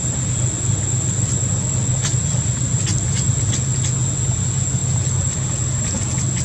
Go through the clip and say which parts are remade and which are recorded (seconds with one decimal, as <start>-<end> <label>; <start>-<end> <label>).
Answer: 0.0-6.4 recorded